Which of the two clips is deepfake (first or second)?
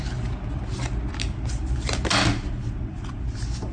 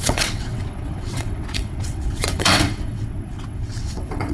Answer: second